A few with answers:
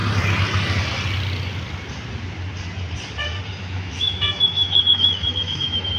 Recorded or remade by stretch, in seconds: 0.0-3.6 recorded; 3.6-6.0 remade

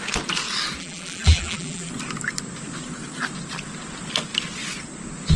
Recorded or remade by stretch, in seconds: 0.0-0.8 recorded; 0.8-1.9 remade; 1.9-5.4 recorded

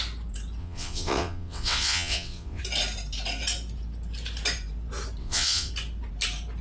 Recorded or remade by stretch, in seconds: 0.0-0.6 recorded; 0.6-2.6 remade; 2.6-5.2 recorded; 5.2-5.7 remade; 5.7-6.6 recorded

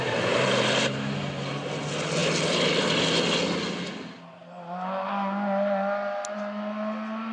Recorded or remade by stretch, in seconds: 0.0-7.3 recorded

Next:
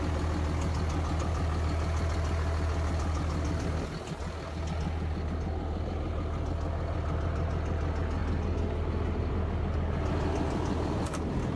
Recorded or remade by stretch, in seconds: 0.0-11.6 recorded